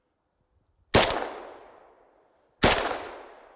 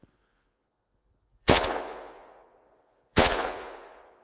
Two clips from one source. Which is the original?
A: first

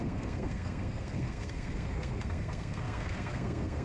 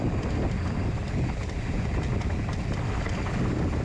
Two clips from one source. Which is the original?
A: second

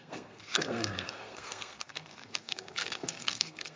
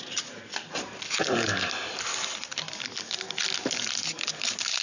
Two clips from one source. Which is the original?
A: second